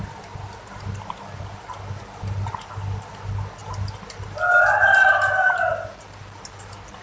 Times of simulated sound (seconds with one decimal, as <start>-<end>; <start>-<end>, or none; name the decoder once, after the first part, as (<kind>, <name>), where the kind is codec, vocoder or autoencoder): none